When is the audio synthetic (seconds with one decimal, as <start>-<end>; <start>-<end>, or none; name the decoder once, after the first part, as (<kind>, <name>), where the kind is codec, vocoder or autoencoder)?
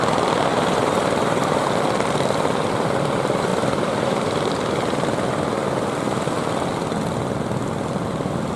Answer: 0.5-1.7 (vocoder, BigVGAN v2); 3.5-4.5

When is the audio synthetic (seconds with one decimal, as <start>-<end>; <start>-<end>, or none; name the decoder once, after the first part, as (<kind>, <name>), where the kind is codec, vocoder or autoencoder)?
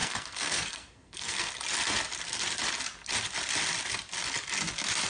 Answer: 0.0-1.5 (codec, SNAC)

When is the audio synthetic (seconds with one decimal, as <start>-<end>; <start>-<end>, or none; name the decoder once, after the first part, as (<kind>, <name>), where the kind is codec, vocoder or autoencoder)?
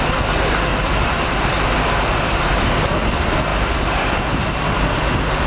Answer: 0.7-1.5 (vocoder, BigVGAN v2)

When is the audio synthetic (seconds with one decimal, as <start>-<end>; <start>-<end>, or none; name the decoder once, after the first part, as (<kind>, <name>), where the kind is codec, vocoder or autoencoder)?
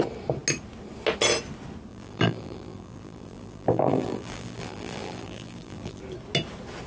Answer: 1.9-6.0 (vocoder, BigVGAN v2)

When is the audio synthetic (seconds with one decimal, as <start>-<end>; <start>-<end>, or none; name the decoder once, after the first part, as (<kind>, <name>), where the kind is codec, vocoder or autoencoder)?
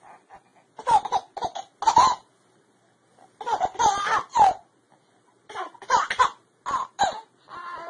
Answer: 0.0-0.5 (vocoder, BigVGAN v2); 5.2-7.9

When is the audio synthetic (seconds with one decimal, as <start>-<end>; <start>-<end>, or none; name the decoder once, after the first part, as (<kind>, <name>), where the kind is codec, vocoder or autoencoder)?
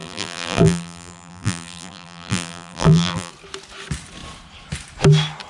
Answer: 0.0-3.3 (vocoder, BigVGAN v2)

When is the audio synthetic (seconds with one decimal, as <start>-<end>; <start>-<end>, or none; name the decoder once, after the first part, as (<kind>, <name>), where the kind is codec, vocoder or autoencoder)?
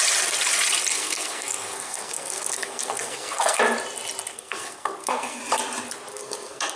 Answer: 0.9-3.6 (codec, SNAC); 4.3-5.4; 6.1-6.8